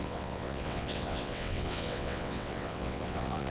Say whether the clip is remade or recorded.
remade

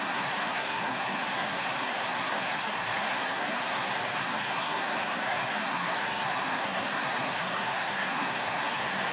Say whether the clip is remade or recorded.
remade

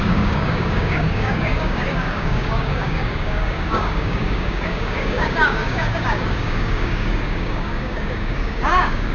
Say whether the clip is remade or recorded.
remade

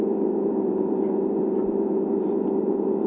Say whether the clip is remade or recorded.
remade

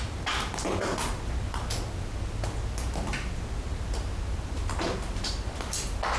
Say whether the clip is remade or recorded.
recorded